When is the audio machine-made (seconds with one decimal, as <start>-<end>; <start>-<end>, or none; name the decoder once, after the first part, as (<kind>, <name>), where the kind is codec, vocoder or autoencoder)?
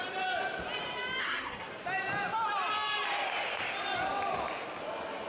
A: 1.2-1.7 (codec, SNAC)